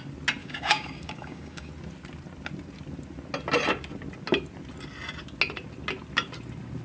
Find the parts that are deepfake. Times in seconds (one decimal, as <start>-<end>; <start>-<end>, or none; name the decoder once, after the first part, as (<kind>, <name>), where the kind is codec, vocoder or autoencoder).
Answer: 0.4-1.7 (codec, DAC)